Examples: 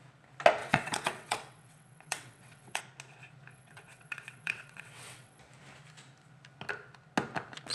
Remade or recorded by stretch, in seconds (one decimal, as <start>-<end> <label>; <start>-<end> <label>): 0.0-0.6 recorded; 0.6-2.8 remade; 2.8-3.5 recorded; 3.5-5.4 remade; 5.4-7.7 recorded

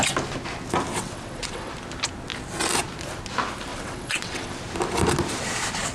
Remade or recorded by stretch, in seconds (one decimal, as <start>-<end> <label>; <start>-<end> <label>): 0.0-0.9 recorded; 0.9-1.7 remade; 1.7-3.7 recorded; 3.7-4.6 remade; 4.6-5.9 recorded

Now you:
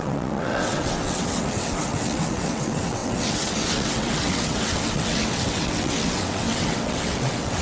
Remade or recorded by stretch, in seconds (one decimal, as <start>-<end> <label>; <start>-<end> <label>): 0.0-7.6 remade

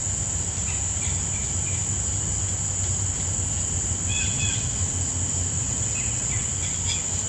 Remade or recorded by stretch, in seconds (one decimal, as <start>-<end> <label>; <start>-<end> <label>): 0.0-4.1 recorded; 4.1-4.8 remade; 4.8-5.6 recorded; 5.6-6.5 remade; 6.5-7.3 recorded